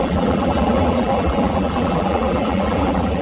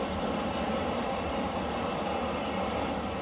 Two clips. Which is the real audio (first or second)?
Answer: second